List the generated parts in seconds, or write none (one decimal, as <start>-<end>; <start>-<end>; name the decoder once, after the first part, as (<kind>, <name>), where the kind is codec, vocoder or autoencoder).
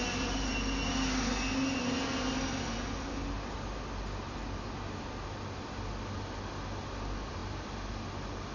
none